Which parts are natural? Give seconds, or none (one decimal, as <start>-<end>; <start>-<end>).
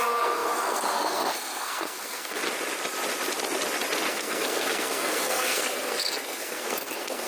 2.4-4.1